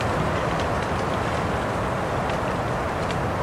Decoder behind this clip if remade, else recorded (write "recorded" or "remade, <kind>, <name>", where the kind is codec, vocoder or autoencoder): recorded